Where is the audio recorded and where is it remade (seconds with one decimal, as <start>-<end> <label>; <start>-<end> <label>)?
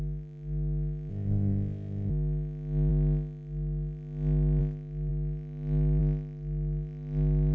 0.0-1.1 recorded; 1.1-2.1 remade; 2.1-7.5 recorded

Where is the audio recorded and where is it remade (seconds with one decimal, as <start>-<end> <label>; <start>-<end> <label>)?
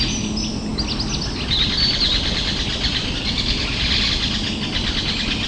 0.0-5.5 recorded